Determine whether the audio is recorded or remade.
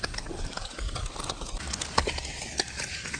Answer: remade